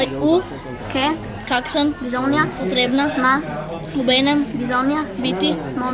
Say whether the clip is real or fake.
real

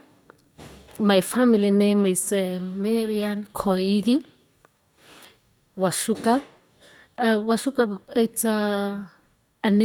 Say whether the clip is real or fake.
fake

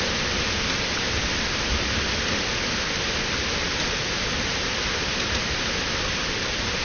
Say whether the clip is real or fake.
real